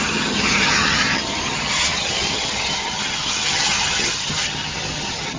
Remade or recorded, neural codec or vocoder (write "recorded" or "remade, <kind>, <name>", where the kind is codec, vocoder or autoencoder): remade, vocoder, HiFi-GAN